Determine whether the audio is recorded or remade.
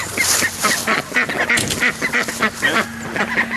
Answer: recorded